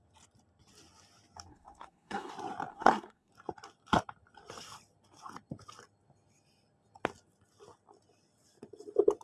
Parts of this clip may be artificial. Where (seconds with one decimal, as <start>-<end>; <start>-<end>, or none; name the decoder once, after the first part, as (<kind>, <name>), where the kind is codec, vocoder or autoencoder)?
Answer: 1.5-2.3 (codec, SNAC); 2.7-3.3